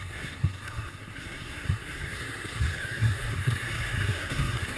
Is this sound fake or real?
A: fake